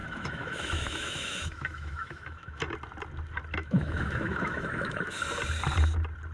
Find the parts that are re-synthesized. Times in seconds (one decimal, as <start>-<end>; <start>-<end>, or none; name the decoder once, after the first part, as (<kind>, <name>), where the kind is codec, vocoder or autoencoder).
0.0-2.6 (autoencoder, DAC-VAE); 3.6-5.2